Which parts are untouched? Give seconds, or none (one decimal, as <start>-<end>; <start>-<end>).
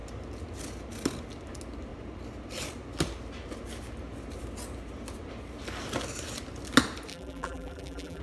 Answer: 0.0-7.1